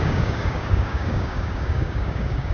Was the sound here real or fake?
fake